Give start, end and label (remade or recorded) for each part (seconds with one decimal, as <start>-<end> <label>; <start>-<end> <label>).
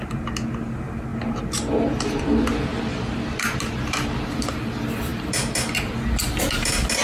0.0-7.0 recorded